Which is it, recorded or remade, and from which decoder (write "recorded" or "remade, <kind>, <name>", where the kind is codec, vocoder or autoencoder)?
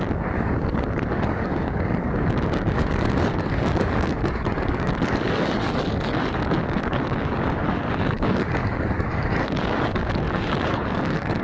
remade, codec, DAC